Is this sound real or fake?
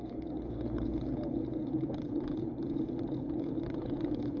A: fake